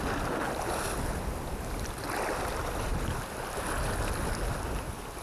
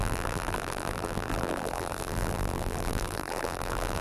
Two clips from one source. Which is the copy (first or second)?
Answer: second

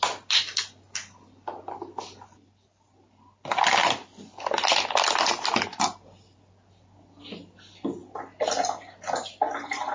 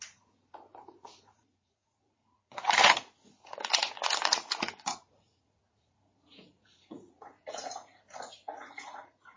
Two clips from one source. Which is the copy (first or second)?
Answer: second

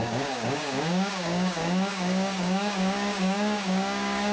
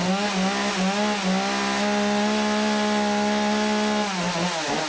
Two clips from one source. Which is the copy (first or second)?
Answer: first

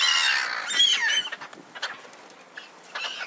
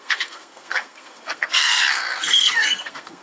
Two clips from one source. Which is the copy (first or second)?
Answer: second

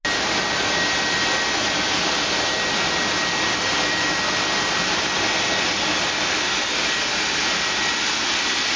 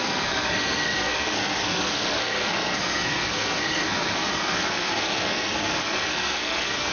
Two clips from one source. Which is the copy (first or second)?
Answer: second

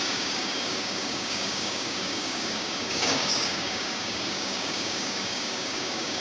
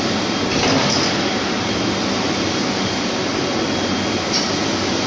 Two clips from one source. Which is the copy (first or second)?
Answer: first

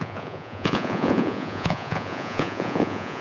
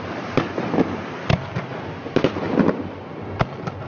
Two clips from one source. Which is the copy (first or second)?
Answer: first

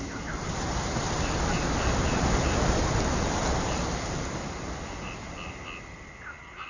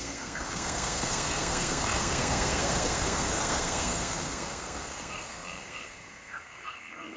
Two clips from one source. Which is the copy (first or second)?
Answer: second